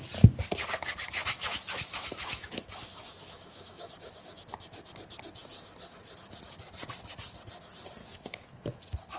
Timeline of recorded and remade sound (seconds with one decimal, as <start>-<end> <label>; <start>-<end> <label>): 0.0-1.2 recorded; 1.2-4.9 remade; 4.9-8.0 recorded; 8.0-9.2 remade